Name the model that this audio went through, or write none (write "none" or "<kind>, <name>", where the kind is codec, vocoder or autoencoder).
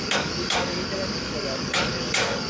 codec, DAC